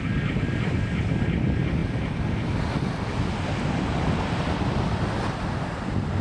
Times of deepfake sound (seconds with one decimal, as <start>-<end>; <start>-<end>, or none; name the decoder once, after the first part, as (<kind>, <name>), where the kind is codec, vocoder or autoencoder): none